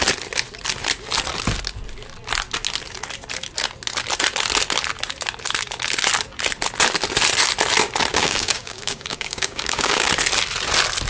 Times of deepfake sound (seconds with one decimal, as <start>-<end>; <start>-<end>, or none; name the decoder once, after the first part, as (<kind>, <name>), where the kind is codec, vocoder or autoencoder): 8.1-10.1 (codec, DAC)